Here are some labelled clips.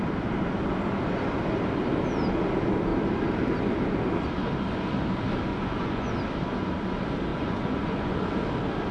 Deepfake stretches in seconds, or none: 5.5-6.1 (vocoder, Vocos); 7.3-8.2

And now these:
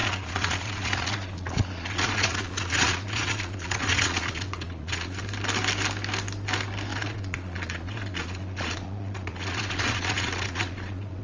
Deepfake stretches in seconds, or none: 0.0-5.2 (vocoder, Vocos); 6.9-11.2

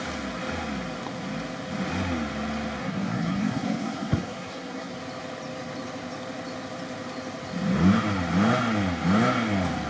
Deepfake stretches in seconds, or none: 2.8-4.9 (codec, SNAC)

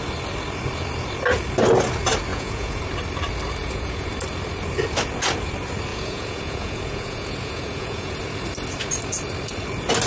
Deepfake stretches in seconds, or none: 2.3-2.8 (vocoder, Vocos); 3.6-4.1; 5.9-8.2

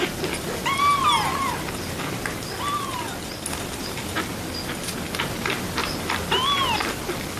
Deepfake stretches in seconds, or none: none

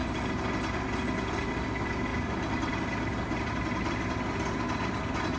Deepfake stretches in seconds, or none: none